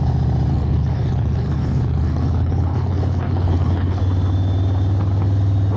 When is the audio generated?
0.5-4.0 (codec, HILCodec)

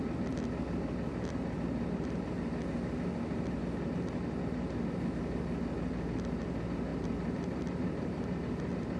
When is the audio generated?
none

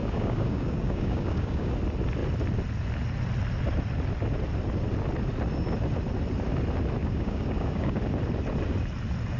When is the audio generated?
0.0-1.7 (codec, DAC); 7.0-8.0

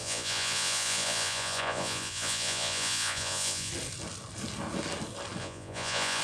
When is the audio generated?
0.0-3.7 (vocoder, Vocos); 5.4-6.2

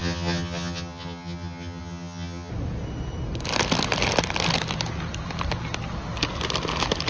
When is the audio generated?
0.0-2.5 (vocoder, HiFi-GAN)

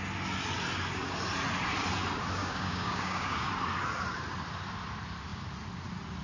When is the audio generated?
2.4-3.5 (codec, DAC)

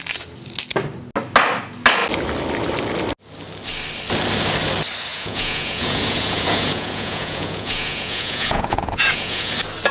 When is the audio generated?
5.1-9.5 (vocoder, Vocos)